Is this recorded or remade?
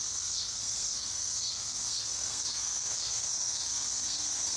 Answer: remade